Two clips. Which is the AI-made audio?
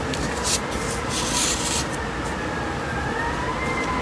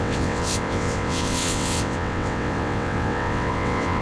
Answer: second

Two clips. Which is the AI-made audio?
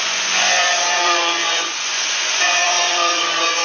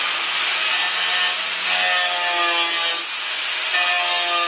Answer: first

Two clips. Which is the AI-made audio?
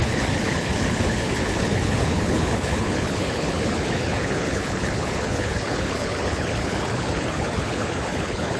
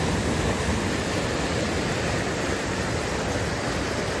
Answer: first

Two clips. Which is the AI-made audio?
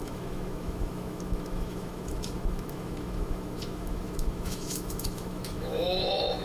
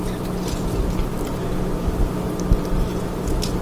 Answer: first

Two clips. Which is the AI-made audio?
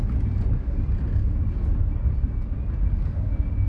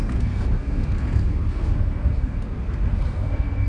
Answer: second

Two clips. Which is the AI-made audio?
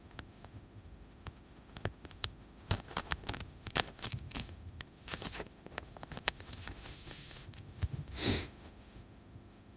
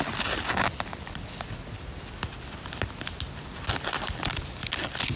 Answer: first